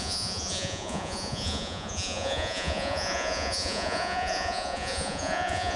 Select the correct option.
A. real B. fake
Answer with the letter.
B